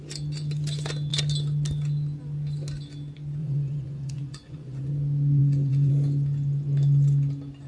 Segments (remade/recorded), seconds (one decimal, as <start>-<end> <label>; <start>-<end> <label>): 0.0-3.4 recorded; 3.4-4.9 remade; 4.9-5.4 recorded; 5.4-5.9 remade; 5.9-7.7 recorded